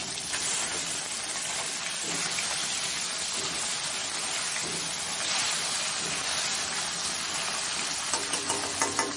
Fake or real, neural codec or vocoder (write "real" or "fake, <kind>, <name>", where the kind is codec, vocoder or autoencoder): real